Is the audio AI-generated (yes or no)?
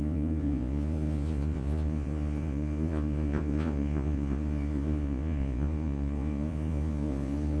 yes